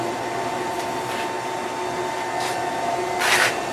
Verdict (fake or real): real